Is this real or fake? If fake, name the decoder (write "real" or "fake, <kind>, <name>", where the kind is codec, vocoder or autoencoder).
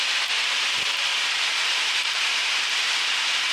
real